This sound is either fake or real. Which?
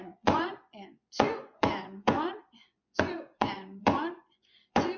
fake